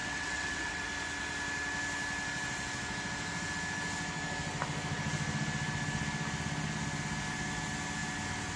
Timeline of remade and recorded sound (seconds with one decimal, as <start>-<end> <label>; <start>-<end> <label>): 0.0-0.8 remade; 0.8-8.6 recorded